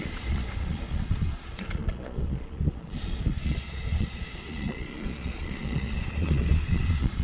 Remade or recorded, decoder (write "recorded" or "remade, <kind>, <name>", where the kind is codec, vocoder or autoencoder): remade, vocoder, Vocos